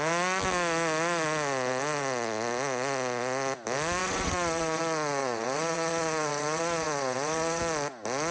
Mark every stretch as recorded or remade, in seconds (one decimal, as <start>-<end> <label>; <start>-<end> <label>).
0.0-4.0 recorded; 4.0-4.8 remade; 4.8-5.2 recorded; 5.2-7.6 remade; 7.6-8.3 recorded